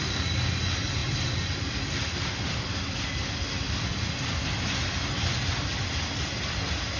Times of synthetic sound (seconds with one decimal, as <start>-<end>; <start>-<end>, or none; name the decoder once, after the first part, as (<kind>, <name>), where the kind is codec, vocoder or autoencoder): none